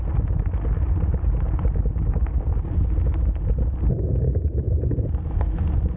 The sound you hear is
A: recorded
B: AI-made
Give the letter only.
A